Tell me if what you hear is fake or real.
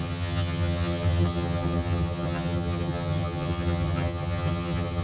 fake